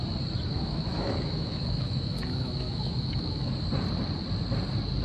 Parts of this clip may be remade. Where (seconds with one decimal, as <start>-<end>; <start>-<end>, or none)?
0.5-3.5